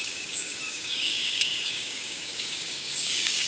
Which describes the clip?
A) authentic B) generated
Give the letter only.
B